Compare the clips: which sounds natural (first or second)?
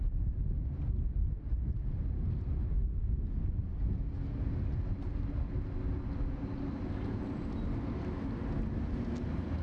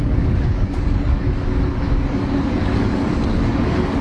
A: first